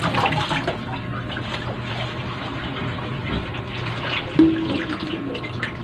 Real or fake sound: real